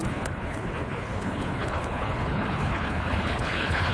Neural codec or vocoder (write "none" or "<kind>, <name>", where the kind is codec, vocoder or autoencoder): codec, HILCodec